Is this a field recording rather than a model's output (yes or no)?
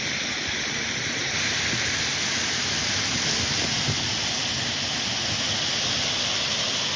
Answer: yes